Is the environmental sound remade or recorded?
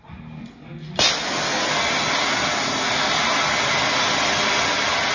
recorded